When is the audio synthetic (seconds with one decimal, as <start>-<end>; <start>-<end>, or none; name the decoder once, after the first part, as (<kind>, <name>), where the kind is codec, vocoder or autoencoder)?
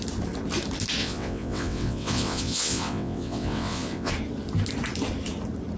1.0-4.1 (vocoder, WaveNeXt)